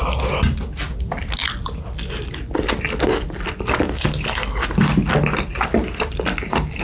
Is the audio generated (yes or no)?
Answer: no